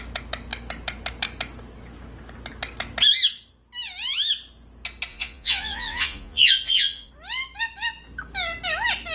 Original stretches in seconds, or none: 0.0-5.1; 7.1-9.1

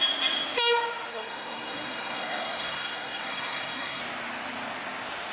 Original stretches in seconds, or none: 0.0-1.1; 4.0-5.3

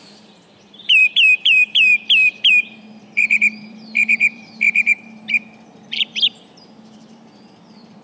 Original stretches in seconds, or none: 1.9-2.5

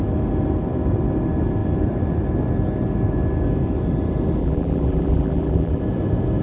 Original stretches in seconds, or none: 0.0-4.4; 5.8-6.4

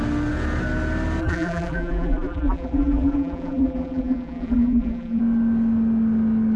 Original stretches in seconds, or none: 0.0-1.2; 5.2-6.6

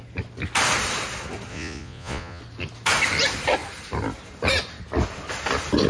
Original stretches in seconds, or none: 0.0-1.5; 2.4-5.9